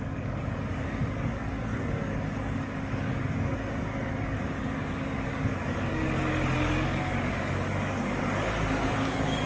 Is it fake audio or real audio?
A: fake